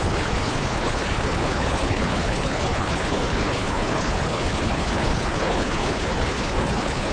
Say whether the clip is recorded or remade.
remade